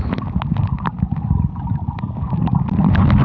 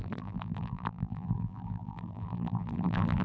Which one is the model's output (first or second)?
second